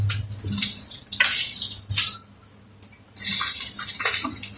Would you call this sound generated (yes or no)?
no